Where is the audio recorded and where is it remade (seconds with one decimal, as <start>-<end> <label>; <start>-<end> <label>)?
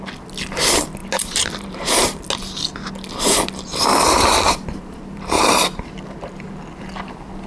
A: 0.0-1.0 recorded; 1.0-2.2 remade; 2.2-3.7 recorded; 3.7-6.5 remade; 6.5-7.5 recorded